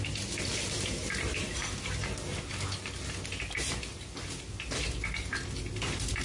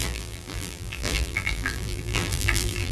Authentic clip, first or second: first